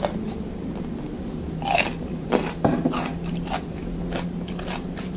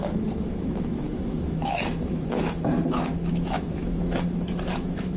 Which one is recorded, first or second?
first